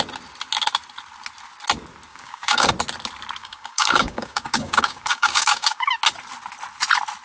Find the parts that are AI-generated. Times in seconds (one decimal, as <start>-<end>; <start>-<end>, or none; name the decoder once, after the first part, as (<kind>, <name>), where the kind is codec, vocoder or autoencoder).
2.1-2.7 (codec, DAC); 3.4-5.9